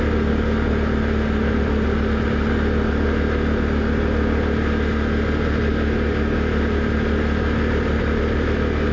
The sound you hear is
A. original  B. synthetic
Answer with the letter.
A